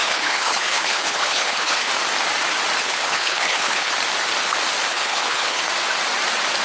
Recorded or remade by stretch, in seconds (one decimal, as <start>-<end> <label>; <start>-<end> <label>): 0.0-1.9 remade; 1.9-2.8 recorded; 2.8-3.9 remade; 3.9-4.9 recorded; 4.9-5.6 remade; 5.6-6.6 recorded